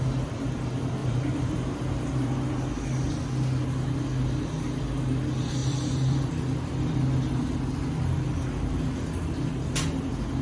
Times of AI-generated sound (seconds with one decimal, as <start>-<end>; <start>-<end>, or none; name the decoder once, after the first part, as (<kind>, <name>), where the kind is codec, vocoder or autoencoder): 1.0-2.3 (vocoder, BigVGAN v2); 5.6-6.3